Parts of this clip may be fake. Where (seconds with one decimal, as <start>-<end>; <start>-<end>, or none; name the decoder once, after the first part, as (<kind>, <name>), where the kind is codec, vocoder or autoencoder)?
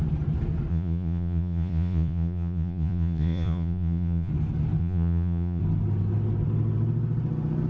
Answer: 0.7-4.3 (vocoder, Vocos); 4.8-5.6